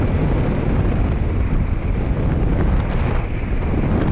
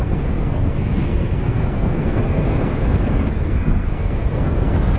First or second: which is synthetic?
second